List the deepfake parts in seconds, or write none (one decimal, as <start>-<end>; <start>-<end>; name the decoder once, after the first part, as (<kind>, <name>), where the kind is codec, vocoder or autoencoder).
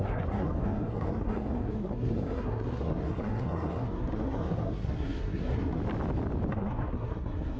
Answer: 0.0-5.8 (codec, SNAC); 6.5-7.6